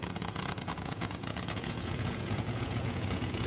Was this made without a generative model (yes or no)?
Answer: no